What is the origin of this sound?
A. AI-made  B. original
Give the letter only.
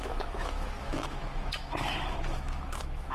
A